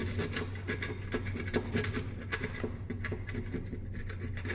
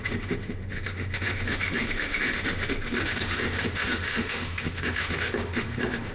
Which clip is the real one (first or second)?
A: first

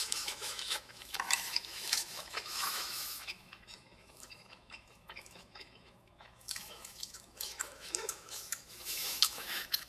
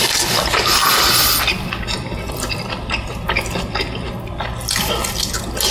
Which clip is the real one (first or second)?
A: second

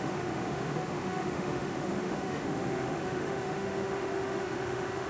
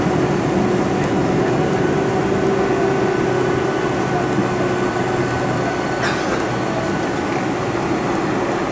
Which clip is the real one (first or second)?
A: second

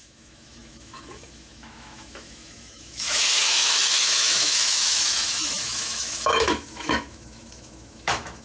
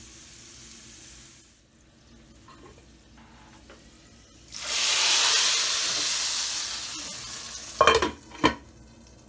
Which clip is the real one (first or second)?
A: second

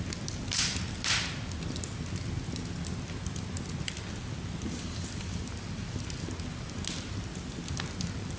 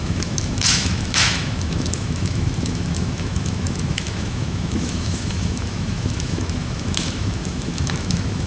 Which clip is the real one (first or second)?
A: first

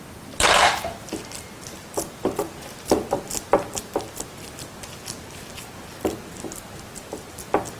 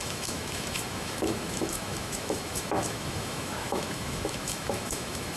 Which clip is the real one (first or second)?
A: first